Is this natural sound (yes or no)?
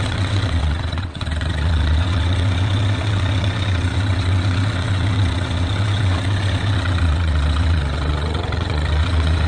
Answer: no